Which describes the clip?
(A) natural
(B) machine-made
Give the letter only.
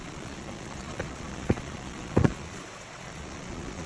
B